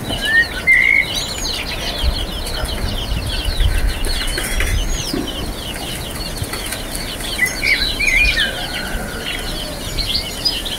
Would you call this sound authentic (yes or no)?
yes